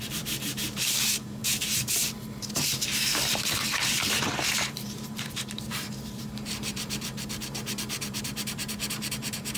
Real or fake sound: fake